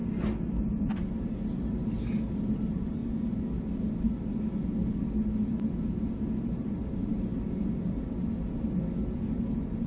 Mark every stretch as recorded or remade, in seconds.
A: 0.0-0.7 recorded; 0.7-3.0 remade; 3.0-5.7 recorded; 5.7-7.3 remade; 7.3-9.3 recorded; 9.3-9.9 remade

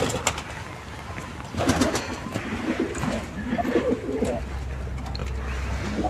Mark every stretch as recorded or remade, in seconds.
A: 0.0-2.1 recorded; 2.1-4.4 remade; 4.4-6.1 recorded

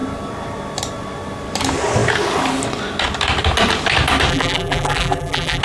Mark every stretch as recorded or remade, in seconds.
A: 0.0-4.3 recorded; 4.3-5.6 remade